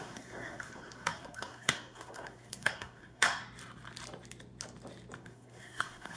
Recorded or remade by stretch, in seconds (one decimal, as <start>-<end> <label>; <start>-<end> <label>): 0.0-3.4 remade; 3.4-5.2 recorded; 5.2-6.2 remade

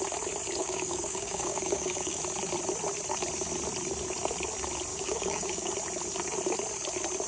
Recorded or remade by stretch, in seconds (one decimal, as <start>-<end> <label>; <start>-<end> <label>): 0.0-0.6 recorded; 0.6-2.2 remade; 2.2-4.9 recorded; 4.9-5.7 remade; 5.7-7.3 recorded

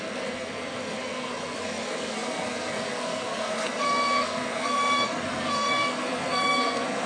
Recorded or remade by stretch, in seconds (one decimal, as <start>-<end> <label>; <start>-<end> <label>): 0.0-7.1 remade

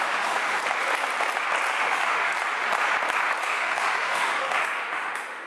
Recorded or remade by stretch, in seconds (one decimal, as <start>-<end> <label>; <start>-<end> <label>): 0.0-0.6 remade; 0.6-1.7 recorded; 1.7-2.3 remade; 2.3-3.4 recorded; 3.4-5.5 remade

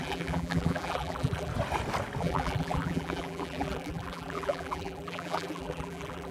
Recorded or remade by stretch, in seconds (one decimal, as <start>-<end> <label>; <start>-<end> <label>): 0.0-1.5 remade; 1.5-2.2 recorded; 2.2-6.3 remade

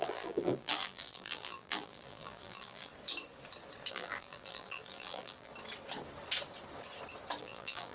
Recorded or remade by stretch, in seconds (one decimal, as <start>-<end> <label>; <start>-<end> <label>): 0.0-2.9 remade; 2.9-3.9 recorded; 3.9-5.5 remade; 5.5-7.4 recorded; 7.4-7.9 remade

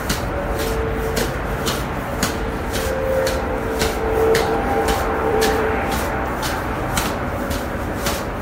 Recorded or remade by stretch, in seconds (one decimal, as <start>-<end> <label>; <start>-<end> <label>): 0.0-2.1 recorded; 2.1-2.9 remade; 2.9-3.8 recorded; 3.8-5.9 remade; 5.9-8.4 recorded

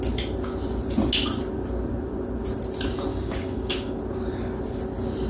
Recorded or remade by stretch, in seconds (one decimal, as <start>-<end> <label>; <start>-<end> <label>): 0.0-3.1 recorded; 3.1-4.0 remade; 4.0-5.3 recorded